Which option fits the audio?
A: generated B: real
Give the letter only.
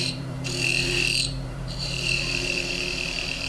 A